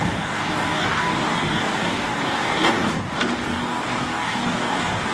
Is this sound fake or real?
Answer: fake